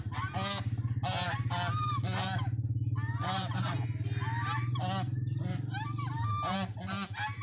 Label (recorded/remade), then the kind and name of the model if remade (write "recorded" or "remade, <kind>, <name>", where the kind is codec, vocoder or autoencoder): recorded